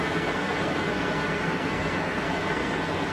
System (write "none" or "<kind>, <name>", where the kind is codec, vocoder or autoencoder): codec, SNAC